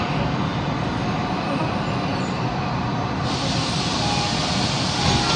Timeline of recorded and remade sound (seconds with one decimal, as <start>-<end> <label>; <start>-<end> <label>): 0.0-5.4 recorded